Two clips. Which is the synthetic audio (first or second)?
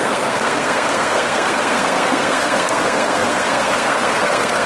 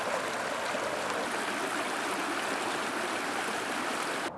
first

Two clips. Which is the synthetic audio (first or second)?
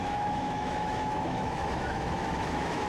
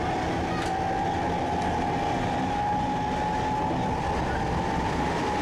first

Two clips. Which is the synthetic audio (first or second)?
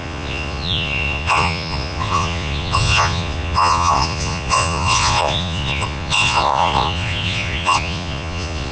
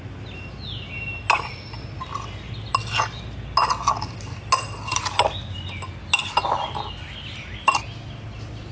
first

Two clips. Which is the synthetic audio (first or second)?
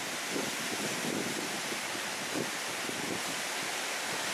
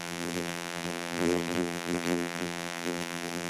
second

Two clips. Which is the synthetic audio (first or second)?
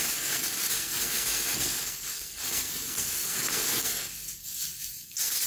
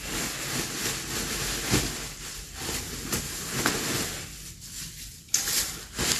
first